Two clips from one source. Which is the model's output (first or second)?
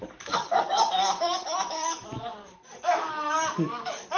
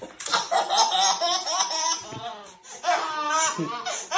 first